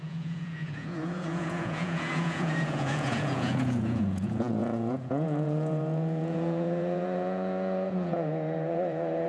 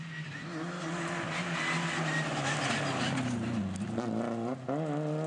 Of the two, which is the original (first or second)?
second